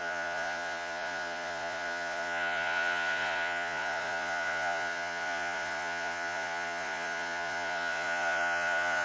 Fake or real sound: fake